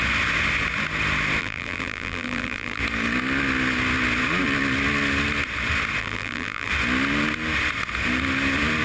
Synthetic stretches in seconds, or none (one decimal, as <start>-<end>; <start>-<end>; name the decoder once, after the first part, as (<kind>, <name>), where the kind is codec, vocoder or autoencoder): 1.4-2.8 (vocoder, BigVGAN v2); 6.0-6.7